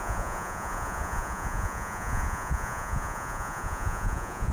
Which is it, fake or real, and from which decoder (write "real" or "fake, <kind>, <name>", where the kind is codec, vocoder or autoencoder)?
fake, vocoder, Vocos